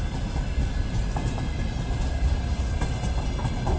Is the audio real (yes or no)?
yes